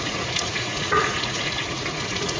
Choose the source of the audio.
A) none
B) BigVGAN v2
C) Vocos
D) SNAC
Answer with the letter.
C